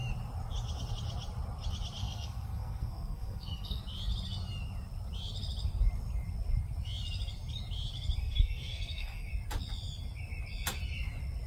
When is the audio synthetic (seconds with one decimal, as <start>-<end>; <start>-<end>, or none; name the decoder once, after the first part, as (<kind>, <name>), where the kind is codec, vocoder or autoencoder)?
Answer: 2.0-3.8 (codec, SNAC); 8.2-9.3